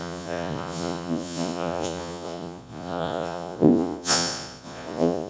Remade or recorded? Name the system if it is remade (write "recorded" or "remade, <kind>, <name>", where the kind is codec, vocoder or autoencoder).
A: remade, vocoder, Vocos